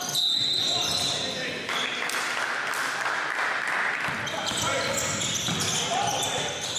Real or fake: real